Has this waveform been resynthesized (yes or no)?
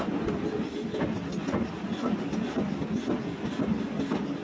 no